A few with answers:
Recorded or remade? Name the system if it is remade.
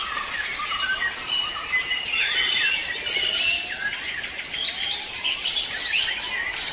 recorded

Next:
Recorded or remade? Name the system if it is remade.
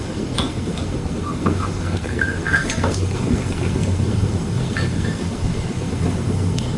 remade, codec, SNAC